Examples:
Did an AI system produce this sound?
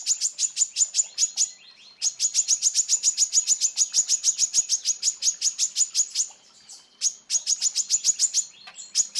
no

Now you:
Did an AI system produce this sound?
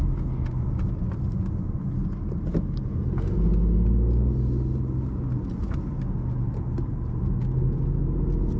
no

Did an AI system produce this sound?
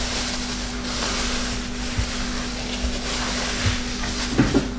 no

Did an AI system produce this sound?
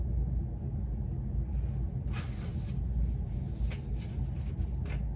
no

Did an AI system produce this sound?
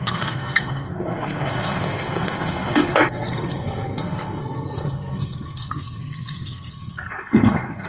yes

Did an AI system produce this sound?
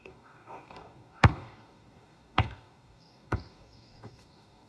yes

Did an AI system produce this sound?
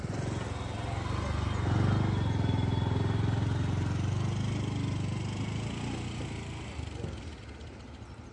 no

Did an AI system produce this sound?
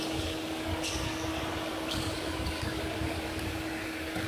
yes